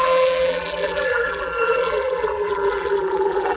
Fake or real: fake